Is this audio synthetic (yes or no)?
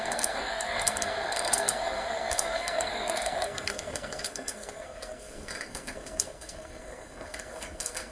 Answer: yes